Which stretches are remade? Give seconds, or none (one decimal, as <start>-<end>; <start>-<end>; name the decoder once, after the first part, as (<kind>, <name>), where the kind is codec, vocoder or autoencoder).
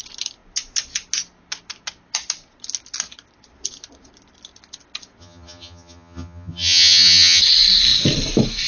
5.2-7.4 (vocoder, HiFi-GAN)